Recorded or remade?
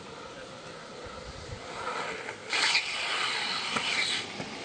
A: recorded